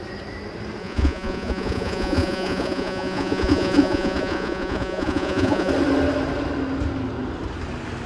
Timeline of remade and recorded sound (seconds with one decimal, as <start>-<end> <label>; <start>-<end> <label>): 0.0-0.8 recorded; 0.8-5.7 remade; 5.7-8.1 recorded

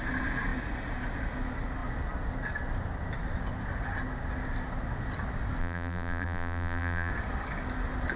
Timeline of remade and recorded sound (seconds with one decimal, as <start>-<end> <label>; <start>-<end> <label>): 0.0-5.6 recorded; 5.6-7.1 remade; 7.1-8.2 recorded

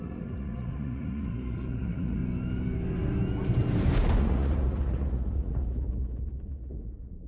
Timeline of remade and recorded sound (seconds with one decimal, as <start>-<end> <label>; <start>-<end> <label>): 0.0-2.2 remade; 2.2-4.2 recorded; 4.2-7.3 remade

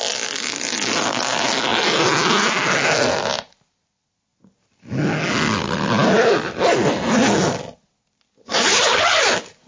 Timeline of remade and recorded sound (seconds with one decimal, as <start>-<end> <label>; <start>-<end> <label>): 0.0-8.5 recorded; 8.5-9.2 remade; 9.2-9.7 recorded

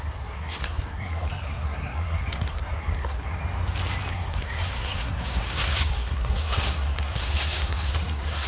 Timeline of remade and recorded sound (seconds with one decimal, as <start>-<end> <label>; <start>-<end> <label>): 0.0-3.4 remade; 3.4-4.1 recorded; 4.1-8.5 remade

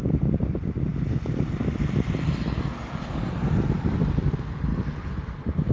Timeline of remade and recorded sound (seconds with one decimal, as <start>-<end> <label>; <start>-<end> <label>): 0.0-5.7 recorded

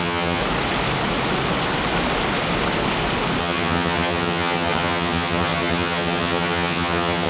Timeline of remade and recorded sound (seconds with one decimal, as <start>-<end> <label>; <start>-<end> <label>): 0.0-0.4 remade; 0.4-3.4 recorded; 3.4-7.3 remade

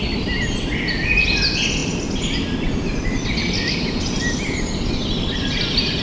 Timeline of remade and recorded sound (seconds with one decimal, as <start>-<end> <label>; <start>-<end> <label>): 0.0-6.0 recorded